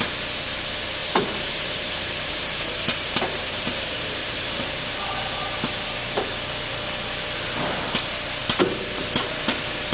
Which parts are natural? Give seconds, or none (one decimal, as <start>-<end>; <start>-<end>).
0.0-1.0; 4.8-9.9